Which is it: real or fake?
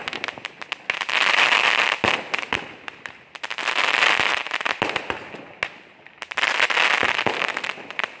real